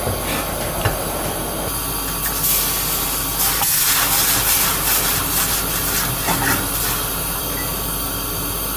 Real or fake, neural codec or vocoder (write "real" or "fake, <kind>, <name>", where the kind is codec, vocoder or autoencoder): real